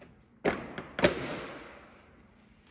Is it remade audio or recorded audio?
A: recorded